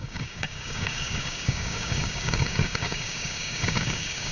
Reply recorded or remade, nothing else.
remade